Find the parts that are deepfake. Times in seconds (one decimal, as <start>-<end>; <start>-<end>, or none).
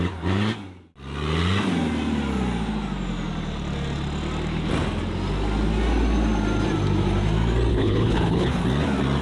7.7-8.6